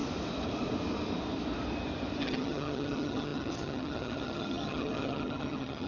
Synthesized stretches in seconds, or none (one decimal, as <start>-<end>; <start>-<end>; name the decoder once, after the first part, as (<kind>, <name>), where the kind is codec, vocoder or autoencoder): 2.2-5.9 (vocoder, HiFi-GAN)